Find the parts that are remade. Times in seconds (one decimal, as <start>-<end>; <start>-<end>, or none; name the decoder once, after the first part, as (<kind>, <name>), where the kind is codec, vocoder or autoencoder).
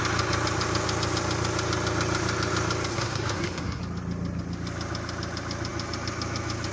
2.9-3.8 (codec, SNAC)